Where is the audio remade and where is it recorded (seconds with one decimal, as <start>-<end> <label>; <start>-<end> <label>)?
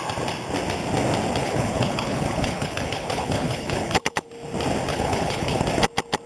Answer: 0.0-1.4 recorded; 1.4-4.3 remade; 4.3-4.9 recorded; 4.9-5.6 remade; 5.6-6.3 recorded